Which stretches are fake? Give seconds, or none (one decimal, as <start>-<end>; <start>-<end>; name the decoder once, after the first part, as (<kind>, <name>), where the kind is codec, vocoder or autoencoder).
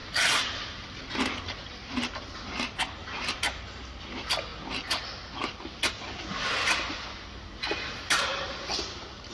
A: 0.0-1.1 (vocoder, BigVGAN v2); 3.0-3.6